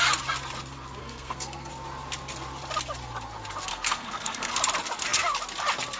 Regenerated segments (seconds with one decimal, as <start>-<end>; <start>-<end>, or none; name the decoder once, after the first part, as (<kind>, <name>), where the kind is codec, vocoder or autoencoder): 1.0-1.7 (codec, SNAC); 3.7-4.5